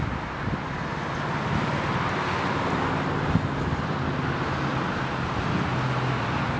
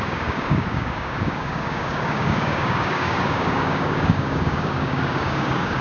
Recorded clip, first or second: first